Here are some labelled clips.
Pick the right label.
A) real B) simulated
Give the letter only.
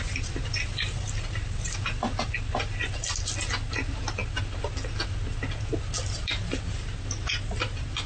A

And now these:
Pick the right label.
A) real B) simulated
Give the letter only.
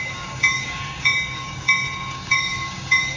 B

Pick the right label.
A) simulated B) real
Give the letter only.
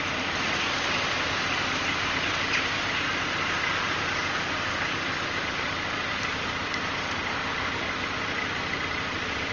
B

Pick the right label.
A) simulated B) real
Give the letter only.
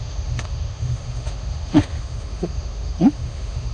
A